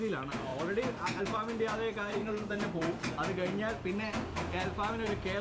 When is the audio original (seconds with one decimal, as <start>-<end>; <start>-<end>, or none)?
0.0-2.2; 3.1-5.4